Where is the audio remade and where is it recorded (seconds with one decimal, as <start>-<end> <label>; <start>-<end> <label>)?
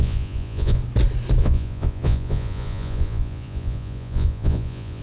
0.0-0.8 remade; 0.8-1.4 recorded; 1.4-5.0 remade